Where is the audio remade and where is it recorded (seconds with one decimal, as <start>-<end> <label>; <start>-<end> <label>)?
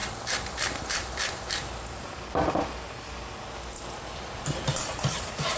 0.0-2.5 remade; 2.5-5.6 recorded